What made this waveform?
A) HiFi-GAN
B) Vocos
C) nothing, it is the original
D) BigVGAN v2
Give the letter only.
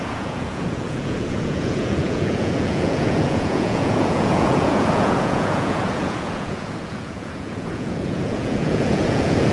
B